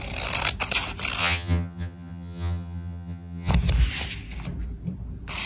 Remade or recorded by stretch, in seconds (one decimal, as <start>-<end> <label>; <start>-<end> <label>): 0.0-1.2 recorded; 1.2-3.5 remade; 3.5-5.5 recorded